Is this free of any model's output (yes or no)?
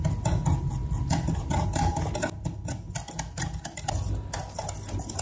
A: yes